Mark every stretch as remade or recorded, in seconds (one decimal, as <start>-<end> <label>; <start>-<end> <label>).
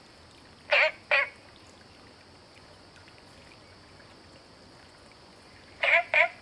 0.0-2.4 recorded; 2.4-6.4 remade